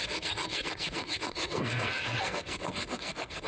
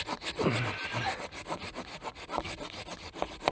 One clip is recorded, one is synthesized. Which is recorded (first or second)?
second